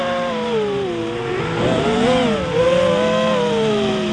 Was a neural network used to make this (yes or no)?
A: no